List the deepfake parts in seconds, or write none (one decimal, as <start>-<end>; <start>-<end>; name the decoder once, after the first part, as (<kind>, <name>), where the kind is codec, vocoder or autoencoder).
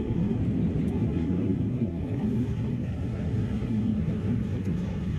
0.0-0.4 (codec, SNAC); 0.9-5.2